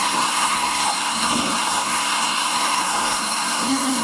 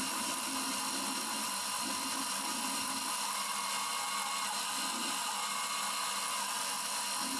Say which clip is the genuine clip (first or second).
second